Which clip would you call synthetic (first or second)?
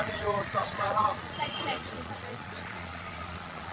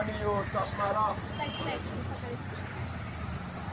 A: first